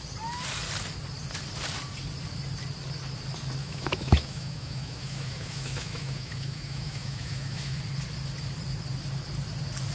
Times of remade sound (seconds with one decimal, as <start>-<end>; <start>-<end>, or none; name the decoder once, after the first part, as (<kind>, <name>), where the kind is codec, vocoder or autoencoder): 3.6-7.8 (autoencoder, DAC-VAE)